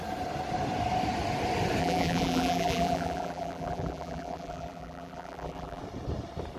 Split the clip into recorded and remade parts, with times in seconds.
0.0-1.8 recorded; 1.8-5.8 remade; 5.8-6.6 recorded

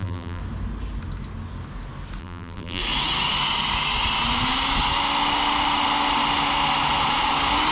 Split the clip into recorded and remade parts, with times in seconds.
0.0-0.4 remade; 0.4-2.2 recorded; 2.2-2.8 remade; 2.8-7.7 recorded

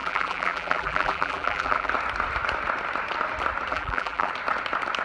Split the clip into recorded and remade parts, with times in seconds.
0.0-1.9 remade; 1.9-3.7 recorded; 3.7-4.3 remade; 4.3-5.0 recorded

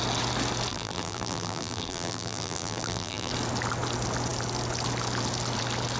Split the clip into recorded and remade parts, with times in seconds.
0.0-0.7 recorded; 0.7-3.3 remade; 3.3-6.0 recorded

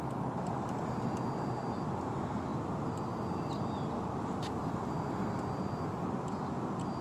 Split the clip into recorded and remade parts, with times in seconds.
0.0-7.0 recorded